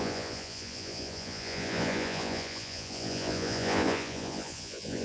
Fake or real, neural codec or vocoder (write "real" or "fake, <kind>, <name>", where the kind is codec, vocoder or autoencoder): fake, vocoder, Vocos